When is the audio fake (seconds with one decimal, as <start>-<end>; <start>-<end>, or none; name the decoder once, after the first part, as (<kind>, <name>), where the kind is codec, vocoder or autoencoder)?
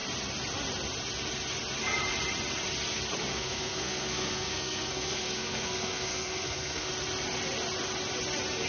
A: 3.3-6.9 (codec, SNAC)